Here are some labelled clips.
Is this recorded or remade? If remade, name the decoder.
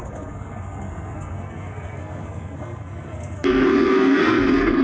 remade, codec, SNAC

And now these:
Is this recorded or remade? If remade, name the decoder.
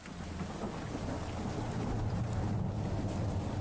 recorded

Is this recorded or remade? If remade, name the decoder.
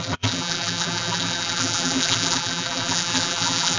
remade, vocoder, BigVGAN v2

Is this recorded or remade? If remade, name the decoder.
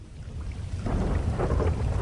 recorded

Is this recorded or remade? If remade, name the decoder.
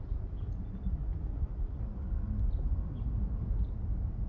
recorded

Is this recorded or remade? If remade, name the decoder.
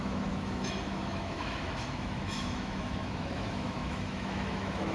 remade, autoencoder, DAC-VAE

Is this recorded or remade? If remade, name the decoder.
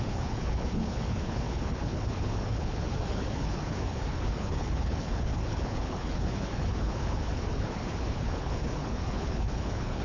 remade, codec, HILCodec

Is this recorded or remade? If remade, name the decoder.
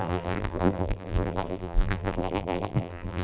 remade, vocoder, BigVGAN v2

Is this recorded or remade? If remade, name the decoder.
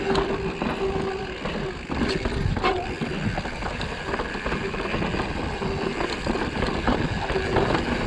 recorded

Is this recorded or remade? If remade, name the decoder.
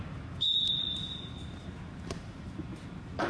remade, vocoder, BigVGAN v2